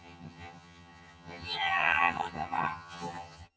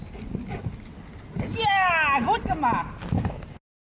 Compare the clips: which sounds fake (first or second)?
first